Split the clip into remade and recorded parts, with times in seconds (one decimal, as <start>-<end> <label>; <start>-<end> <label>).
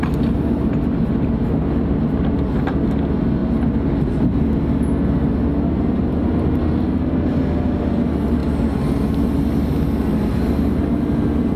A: 0.0-11.6 recorded